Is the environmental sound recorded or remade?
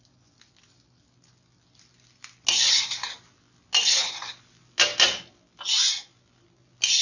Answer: recorded